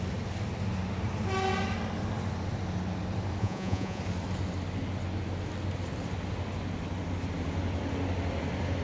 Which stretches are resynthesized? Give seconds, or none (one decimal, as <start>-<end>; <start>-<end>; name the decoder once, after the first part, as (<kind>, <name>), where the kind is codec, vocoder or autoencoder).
3.4-4.0 (vocoder, Vocos)